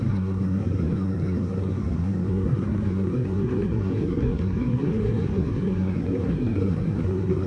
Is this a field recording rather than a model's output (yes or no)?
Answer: no